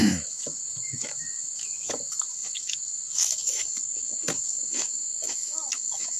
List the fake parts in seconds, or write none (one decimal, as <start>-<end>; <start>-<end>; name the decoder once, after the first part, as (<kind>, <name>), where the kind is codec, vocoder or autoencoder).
0.0-6.2 (autoencoder, DAC-VAE)